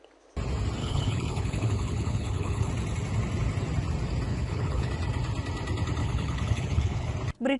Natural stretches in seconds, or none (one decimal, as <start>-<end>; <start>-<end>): 0.0-0.8; 2.7-4.3; 4.9-6.0; 7.1-7.6